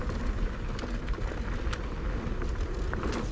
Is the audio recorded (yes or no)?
yes